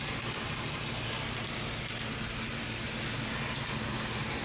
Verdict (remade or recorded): recorded